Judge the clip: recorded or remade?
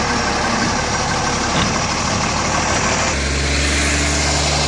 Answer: recorded